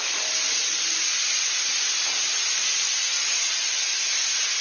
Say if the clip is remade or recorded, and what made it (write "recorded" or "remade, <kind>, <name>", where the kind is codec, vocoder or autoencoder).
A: recorded